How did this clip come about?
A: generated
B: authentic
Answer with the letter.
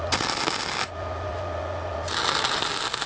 B